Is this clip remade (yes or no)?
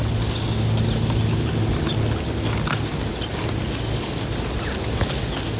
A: no